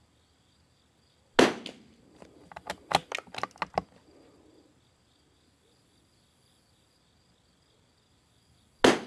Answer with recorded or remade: recorded